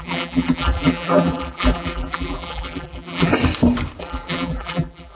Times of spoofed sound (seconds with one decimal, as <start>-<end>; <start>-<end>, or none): 0.0-3.3; 4.0-5.2